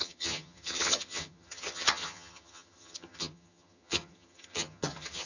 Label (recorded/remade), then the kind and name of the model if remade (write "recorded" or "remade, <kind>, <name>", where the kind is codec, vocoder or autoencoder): remade, vocoder, HiFi-GAN